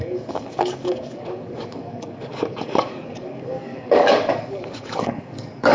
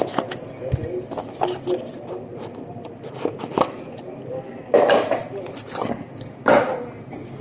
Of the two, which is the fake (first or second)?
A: first